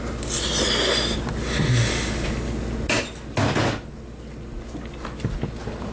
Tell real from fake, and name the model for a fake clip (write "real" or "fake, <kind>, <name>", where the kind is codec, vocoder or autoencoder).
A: real